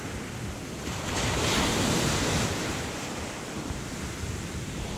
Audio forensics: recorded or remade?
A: recorded